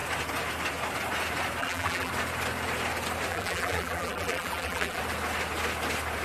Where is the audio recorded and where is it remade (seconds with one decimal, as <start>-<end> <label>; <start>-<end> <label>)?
0.0-1.6 recorded; 1.6-2.1 remade; 2.1-3.3 recorded; 3.3-5.0 remade; 5.0-6.2 recorded